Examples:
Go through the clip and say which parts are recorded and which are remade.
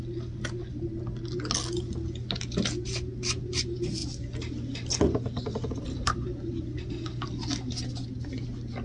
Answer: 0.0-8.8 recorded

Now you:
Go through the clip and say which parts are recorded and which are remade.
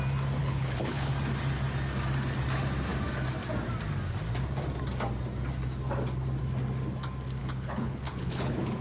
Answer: 0.0-0.4 recorded; 0.4-1.1 remade; 1.1-7.4 recorded; 7.4-8.8 remade